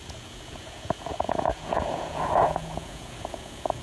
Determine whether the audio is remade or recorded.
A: remade